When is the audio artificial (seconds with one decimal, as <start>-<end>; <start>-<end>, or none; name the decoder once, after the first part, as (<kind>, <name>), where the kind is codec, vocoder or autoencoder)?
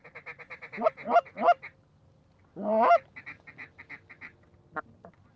none